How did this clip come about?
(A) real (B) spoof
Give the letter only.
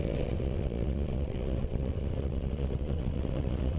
B